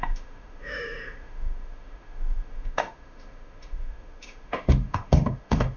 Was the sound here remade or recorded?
remade